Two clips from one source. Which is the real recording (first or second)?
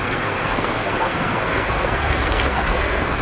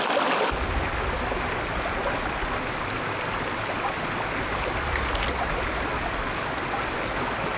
second